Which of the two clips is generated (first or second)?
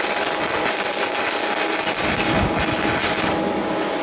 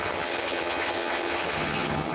second